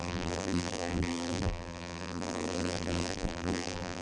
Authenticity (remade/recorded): remade